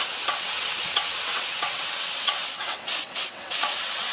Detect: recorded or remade remade